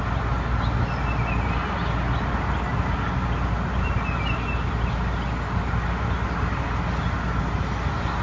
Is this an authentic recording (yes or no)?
yes